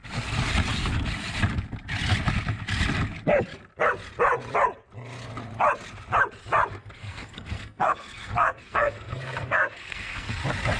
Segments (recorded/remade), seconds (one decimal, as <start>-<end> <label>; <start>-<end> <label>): 0.0-6.8 recorded; 6.8-10.4 remade; 10.4-10.8 recorded